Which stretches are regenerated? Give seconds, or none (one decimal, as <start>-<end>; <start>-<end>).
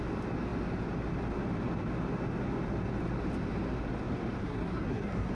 4.4-5.3